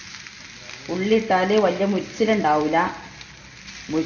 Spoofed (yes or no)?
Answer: no